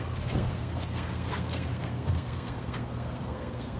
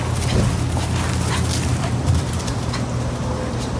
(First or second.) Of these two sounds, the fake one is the first